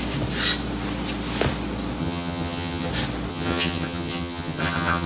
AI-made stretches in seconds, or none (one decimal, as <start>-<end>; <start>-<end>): 2.0-2.9; 3.3-5.1